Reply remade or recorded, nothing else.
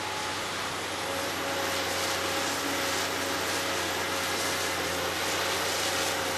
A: recorded